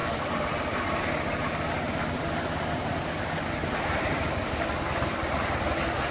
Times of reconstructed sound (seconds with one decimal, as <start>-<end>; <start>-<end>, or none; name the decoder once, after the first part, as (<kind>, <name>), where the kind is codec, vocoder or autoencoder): none